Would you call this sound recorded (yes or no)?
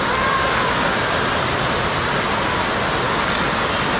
yes